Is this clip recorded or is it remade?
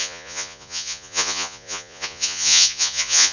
remade